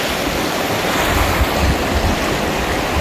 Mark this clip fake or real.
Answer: real